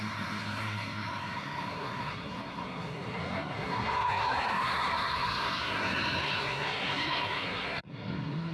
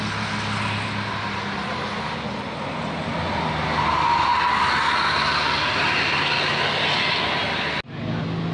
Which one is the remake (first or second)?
first